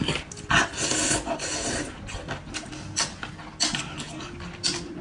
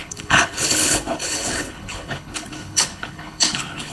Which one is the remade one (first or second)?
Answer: second